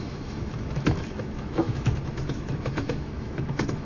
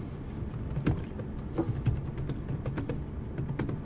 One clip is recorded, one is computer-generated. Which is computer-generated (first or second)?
first